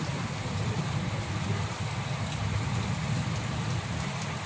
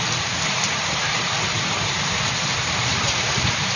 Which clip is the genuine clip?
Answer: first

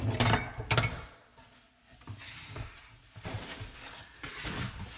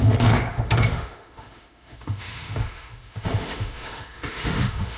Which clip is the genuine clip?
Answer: first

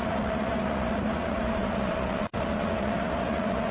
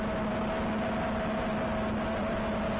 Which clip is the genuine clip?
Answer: second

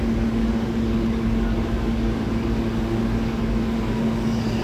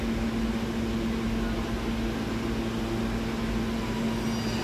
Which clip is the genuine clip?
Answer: second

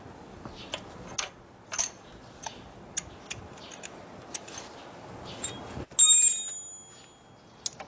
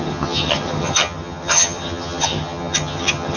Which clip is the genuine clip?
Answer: first